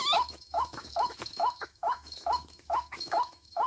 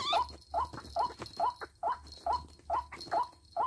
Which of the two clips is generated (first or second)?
first